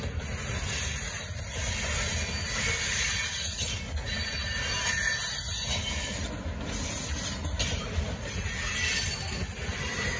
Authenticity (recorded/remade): recorded